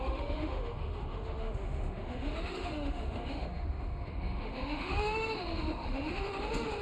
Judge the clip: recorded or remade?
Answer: remade